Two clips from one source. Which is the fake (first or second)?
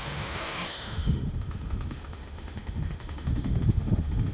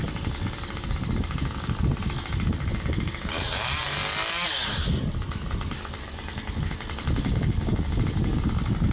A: first